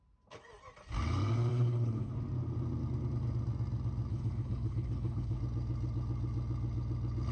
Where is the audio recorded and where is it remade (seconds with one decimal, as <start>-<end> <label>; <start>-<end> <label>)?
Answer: 0.0-1.5 recorded; 1.5-2.1 remade; 2.1-4.1 recorded; 4.1-5.4 remade; 5.4-7.3 recorded